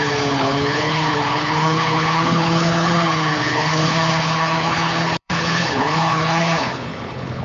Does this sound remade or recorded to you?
remade